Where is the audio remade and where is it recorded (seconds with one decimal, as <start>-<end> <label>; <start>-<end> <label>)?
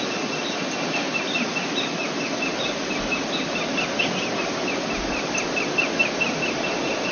0.0-7.1 recorded